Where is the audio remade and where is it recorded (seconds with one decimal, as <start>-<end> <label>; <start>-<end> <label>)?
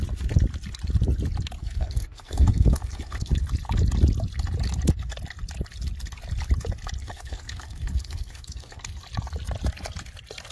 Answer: 0.0-1.6 recorded; 1.6-3.3 remade; 3.3-7.0 recorded; 7.0-9.0 remade; 9.0-10.5 recorded